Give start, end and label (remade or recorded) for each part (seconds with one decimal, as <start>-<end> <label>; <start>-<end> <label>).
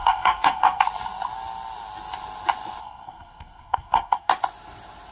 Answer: 0.0-0.8 remade; 0.8-2.8 recorded; 2.8-4.3 remade; 4.3-5.1 recorded